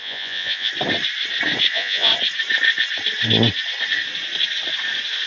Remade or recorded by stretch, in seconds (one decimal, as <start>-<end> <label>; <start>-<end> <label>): 0.0-0.7 remade; 0.7-1.7 recorded; 1.7-2.1 remade; 2.1-5.3 recorded